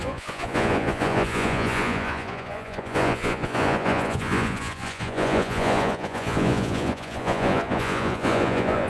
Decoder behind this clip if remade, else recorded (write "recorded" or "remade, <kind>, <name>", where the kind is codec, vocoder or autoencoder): remade, vocoder, Vocos